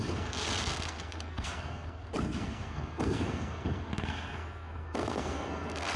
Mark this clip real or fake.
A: fake